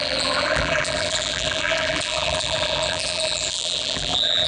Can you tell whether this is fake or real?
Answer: fake